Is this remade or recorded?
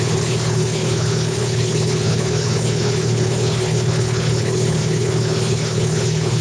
remade